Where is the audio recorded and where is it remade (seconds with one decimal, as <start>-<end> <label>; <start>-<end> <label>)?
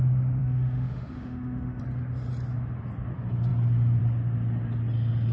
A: 0.0-0.4 recorded; 0.4-1.8 remade; 1.8-5.3 recorded